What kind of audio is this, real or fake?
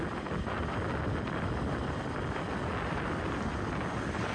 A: real